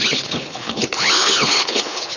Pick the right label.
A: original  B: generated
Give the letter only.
B